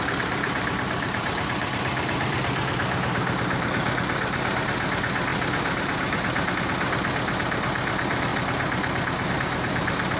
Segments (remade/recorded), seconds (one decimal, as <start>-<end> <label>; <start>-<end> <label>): 0.0-8.3 remade; 8.3-9.3 recorded; 9.3-10.2 remade